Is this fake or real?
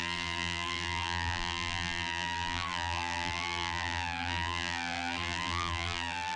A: fake